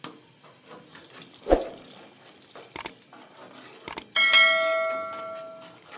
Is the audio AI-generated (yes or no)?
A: no